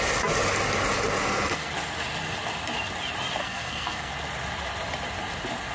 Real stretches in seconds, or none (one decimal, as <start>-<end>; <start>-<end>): 0.0-1.2; 1.7-3.4; 4.1-5.7